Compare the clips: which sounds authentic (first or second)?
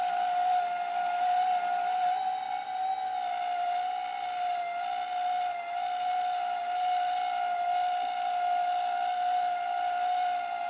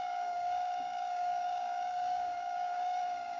first